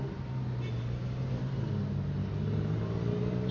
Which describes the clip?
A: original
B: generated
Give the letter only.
A